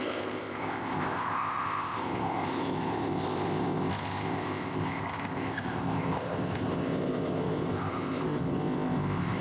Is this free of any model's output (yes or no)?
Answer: no